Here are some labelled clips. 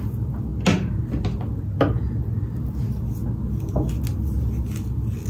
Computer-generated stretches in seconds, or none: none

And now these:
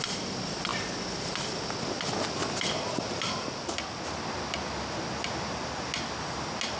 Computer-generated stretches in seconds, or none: none

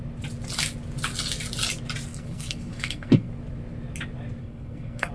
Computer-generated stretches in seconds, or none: 2.1-3.3 (codec, SNAC); 4.4-5.1